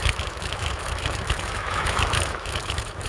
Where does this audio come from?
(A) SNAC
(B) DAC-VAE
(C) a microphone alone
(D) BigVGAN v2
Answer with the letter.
B